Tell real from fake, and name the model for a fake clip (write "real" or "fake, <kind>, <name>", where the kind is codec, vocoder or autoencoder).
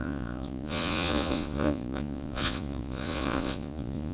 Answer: fake, vocoder, Vocos